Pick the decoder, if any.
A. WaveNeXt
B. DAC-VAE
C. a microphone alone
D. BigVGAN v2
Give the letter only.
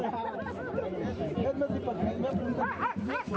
D